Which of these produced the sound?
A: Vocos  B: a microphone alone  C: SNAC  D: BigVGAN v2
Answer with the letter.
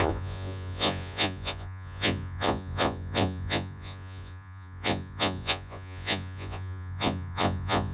A